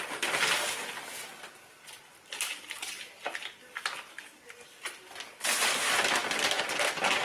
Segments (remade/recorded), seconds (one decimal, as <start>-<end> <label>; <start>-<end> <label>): 0.0-7.2 recorded